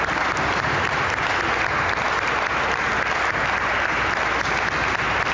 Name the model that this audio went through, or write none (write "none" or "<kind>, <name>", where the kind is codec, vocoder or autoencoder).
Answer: none